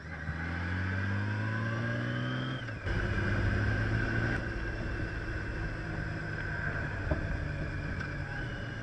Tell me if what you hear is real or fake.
real